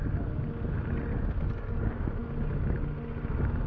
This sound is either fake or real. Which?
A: real